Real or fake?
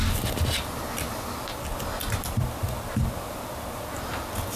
real